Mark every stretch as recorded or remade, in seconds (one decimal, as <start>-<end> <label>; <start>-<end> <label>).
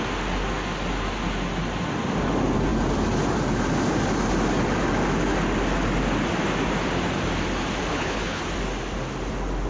0.0-7.9 recorded; 7.9-8.4 remade; 8.4-9.7 recorded